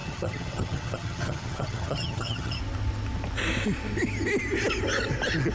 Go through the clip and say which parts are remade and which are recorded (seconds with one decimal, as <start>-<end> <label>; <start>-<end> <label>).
0.0-2.6 remade; 2.6-5.5 recorded